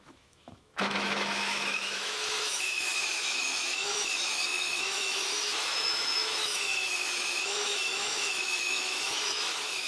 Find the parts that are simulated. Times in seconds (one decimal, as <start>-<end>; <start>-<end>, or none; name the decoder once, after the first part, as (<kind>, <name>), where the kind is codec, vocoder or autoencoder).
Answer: 0.0-9.9 (autoencoder, DAC-VAE)